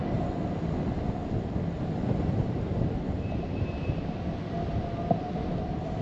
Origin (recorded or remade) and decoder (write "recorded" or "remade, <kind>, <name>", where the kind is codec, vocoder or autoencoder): recorded